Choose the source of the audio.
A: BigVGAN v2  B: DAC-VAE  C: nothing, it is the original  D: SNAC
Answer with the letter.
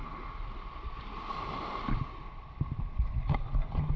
C